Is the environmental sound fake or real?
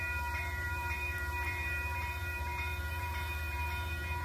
fake